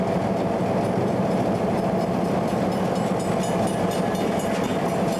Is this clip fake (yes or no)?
no